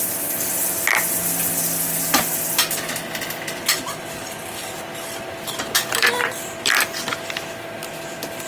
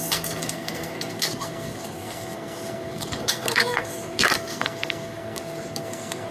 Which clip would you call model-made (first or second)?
second